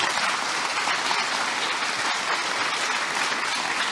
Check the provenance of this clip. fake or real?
real